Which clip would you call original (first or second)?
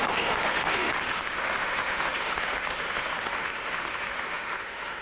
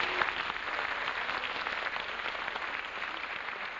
second